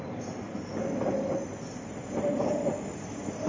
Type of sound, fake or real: real